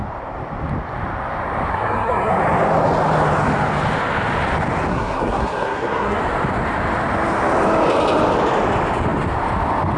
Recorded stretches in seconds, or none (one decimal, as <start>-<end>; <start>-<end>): 0.0-1.7; 2.4-4.9; 6.2-10.0